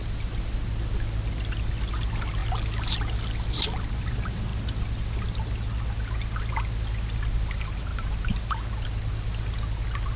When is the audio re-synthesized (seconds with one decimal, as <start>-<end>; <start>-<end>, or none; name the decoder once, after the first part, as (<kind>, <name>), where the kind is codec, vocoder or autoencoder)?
none

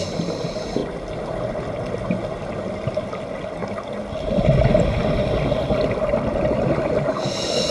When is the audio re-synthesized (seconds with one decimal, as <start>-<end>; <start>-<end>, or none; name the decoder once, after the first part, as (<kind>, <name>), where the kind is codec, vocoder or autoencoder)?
none